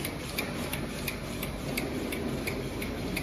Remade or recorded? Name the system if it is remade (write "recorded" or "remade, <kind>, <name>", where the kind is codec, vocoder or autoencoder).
recorded